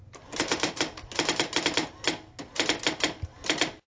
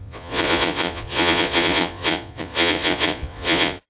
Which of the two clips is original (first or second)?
first